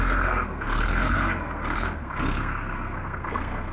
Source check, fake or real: fake